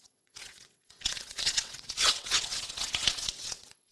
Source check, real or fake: fake